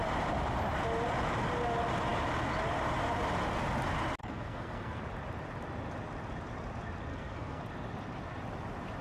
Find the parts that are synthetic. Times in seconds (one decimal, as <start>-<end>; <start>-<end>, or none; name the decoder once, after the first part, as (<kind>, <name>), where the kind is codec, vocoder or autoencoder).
4.2-5.0 (codec, SNAC); 7.1-7.6